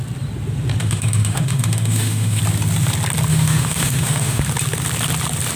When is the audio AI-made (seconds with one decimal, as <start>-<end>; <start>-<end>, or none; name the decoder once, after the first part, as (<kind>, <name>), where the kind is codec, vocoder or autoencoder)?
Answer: 0.8-2.4 (autoencoder, DAC-VAE); 3.3-4.4